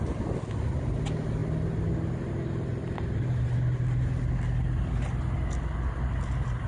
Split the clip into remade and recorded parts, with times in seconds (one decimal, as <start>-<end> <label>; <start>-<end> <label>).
0.0-6.7 recorded